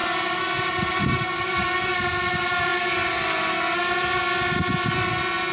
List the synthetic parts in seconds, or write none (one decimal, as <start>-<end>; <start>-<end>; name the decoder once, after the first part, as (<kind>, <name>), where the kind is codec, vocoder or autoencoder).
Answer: 0.0-1.9 (vocoder, BigVGAN v2)